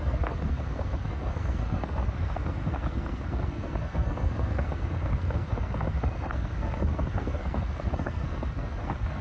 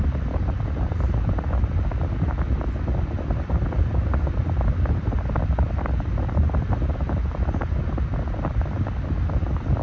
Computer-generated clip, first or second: first